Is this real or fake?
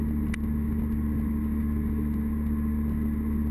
real